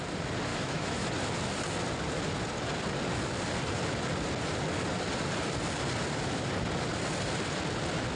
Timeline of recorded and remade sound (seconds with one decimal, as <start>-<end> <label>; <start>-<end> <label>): 0.0-0.5 recorded; 0.5-1.1 remade; 1.1-8.2 recorded